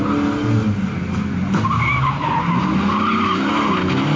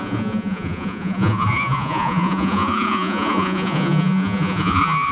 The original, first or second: first